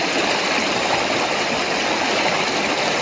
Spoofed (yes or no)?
no